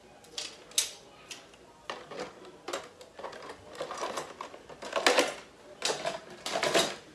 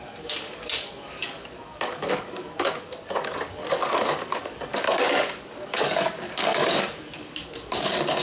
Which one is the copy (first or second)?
second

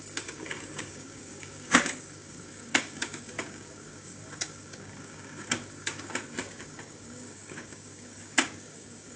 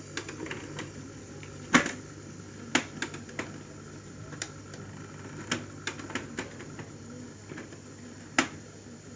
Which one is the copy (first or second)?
first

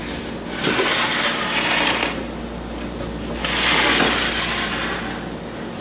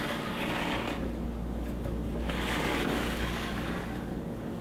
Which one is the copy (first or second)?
second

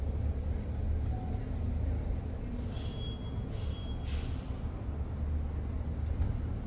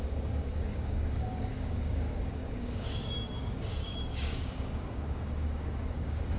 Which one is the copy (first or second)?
second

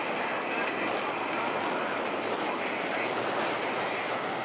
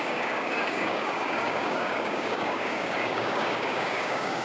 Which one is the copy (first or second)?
second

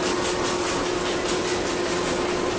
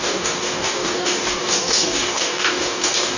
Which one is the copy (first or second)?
second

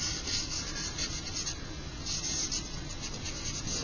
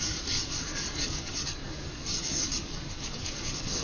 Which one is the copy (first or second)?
second